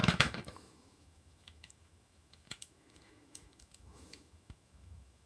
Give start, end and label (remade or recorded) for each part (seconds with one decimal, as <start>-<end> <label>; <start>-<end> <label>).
0.0-5.3 remade